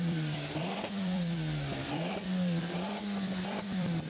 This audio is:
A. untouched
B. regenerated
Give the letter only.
B